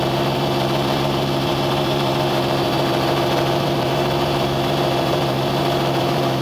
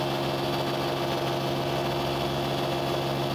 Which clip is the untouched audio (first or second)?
second